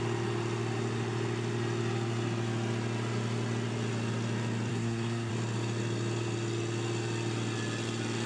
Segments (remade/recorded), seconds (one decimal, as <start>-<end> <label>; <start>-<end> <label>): 0.0-4.7 recorded; 4.7-5.3 remade; 5.3-8.3 recorded